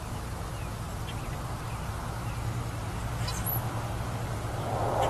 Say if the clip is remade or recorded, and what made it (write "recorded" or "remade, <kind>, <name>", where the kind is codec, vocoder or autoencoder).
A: recorded